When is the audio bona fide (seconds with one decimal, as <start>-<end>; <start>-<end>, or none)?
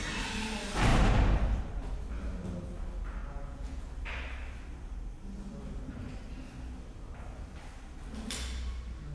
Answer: 0.0-3.2; 3.9-9.1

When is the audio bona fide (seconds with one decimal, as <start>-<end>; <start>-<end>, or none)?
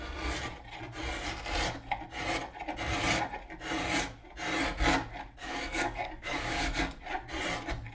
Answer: 0.0-5.4; 6.8-7.9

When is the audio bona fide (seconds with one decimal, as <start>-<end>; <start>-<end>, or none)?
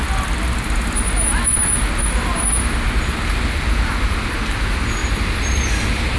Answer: 0.0-6.2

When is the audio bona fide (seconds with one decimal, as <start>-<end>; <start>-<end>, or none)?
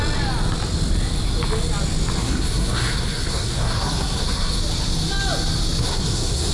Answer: 0.0-2.2; 4.6-5.8